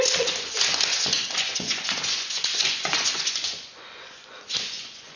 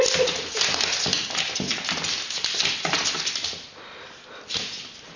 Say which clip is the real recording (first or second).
second